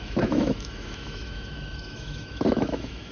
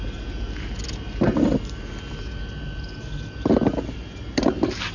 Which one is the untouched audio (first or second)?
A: second